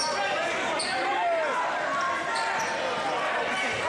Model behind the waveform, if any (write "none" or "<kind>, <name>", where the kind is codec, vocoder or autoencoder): none